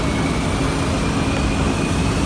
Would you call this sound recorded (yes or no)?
yes